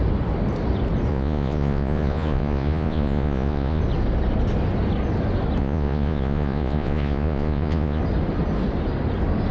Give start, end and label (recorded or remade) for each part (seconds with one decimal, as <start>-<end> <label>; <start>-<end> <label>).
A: 0.0-1.1 recorded; 1.1-3.8 remade; 3.8-5.6 recorded; 5.6-8.0 remade; 8.0-9.5 recorded